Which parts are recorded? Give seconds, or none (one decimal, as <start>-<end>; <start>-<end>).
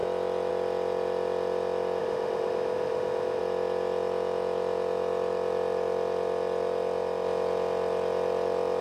0.0-2.0; 3.4-8.8